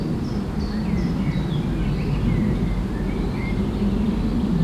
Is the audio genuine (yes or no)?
yes